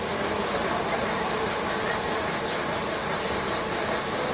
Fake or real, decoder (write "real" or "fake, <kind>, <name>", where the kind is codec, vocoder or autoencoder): real